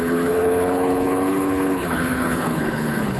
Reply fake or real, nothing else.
fake